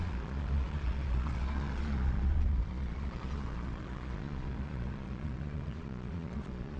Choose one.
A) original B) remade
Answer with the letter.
B